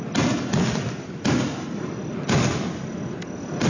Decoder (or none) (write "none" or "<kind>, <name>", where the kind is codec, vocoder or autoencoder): none